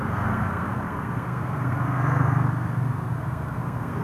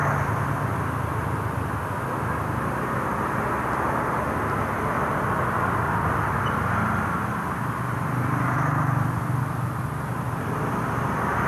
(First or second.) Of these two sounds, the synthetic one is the first